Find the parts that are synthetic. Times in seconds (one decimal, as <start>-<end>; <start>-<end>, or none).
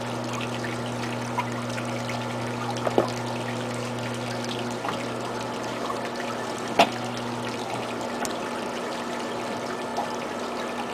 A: none